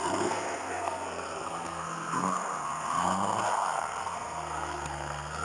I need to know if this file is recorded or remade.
remade